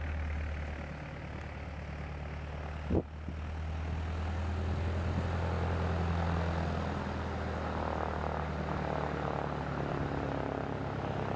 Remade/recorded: recorded